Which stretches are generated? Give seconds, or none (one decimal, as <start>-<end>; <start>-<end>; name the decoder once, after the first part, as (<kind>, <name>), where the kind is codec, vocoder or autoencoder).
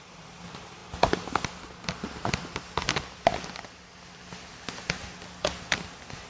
none